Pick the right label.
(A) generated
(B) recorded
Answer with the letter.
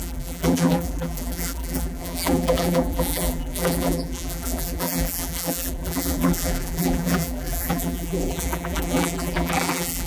A